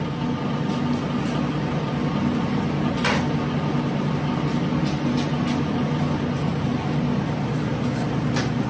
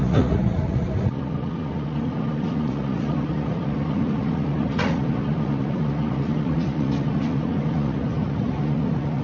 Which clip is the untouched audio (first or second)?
first